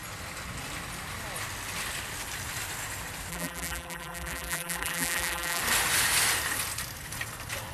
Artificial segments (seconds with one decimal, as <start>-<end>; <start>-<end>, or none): 3.3-5.6